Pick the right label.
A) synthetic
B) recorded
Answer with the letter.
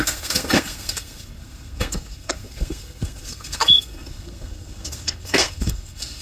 A